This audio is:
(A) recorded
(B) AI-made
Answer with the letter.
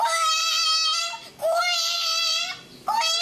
A